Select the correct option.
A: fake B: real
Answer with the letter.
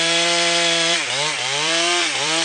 A